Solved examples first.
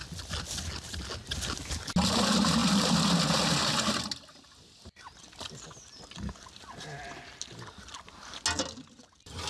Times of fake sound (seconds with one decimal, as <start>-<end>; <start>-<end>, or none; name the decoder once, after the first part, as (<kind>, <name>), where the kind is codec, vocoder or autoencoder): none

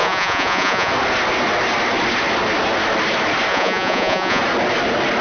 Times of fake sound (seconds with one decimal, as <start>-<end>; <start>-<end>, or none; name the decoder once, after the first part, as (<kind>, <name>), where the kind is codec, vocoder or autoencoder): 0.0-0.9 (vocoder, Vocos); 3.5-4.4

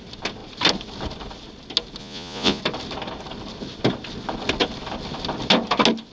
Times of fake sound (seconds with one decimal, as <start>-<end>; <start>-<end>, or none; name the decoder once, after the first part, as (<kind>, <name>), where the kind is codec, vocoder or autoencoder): 2.0-2.6 (vocoder, Vocos)